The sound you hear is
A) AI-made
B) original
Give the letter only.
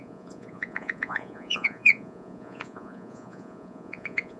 A